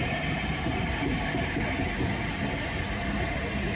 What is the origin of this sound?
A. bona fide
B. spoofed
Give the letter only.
A